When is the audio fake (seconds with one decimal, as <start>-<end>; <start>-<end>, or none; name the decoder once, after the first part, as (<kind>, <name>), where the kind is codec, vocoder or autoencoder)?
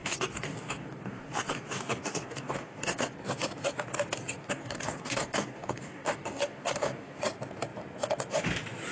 0.0-3.1 (codec, DAC); 4.4-7.2